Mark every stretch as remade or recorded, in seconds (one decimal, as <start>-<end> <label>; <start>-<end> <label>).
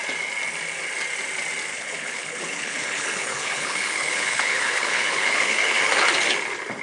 0.0-1.7 recorded; 1.7-5.8 remade; 5.8-6.8 recorded